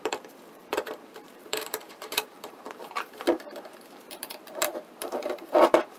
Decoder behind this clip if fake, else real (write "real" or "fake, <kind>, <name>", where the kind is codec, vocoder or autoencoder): fake, vocoder, BigVGAN v2